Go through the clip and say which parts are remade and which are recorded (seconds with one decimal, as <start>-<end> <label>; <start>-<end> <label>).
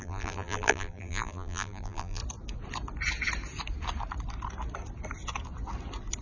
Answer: 0.0-2.2 remade; 2.2-6.2 recorded